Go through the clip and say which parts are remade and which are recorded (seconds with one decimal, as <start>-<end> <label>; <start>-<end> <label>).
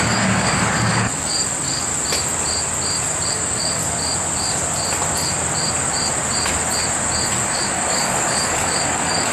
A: 0.0-1.9 remade; 1.9-3.3 recorded; 3.3-3.8 remade; 3.8-7.3 recorded; 7.3-9.3 remade